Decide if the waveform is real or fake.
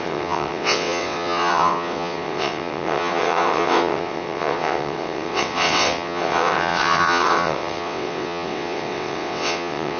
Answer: fake